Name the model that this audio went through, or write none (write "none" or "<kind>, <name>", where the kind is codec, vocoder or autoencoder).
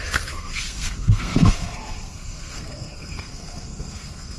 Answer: codec, SNAC